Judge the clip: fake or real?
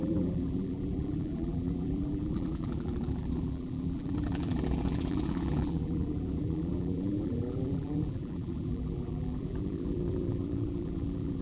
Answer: fake